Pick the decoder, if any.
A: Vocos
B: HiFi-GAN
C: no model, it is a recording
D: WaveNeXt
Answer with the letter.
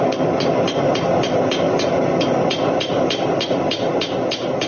C